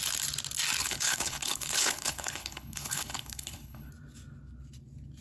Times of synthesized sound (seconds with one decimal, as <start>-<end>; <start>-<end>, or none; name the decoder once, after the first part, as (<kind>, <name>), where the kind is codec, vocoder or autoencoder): 0.8-3.9 (codec, HILCodec)